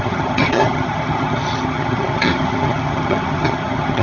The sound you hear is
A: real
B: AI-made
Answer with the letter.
B